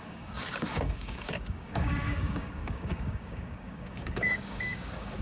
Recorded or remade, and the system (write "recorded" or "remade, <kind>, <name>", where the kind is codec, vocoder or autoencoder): remade, codec, DAC